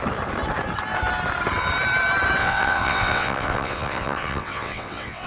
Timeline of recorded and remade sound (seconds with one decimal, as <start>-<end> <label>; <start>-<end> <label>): 0.0-2.4 recorded; 2.4-5.3 remade